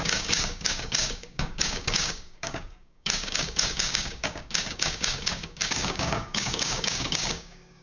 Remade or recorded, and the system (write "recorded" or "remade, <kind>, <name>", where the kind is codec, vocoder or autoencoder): remade, codec, DAC